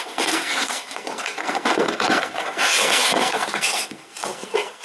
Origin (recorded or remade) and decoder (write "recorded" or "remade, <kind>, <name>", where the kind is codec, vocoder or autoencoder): remade, codec, SNAC